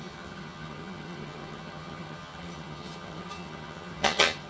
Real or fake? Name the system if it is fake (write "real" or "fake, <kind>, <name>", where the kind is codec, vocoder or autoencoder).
fake, vocoder, HiFi-GAN